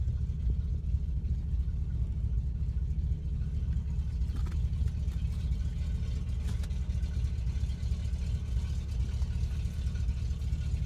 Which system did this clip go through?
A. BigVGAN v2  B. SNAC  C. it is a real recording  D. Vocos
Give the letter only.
C